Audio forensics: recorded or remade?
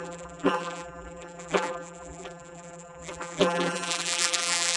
remade